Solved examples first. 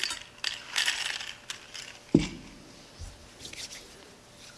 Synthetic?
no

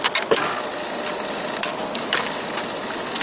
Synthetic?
no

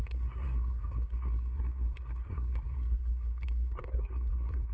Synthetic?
yes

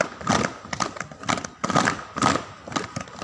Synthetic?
no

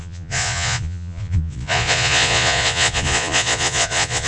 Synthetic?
yes